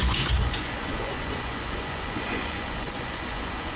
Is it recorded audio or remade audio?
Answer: remade